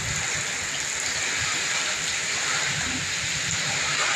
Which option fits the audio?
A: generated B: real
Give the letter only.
B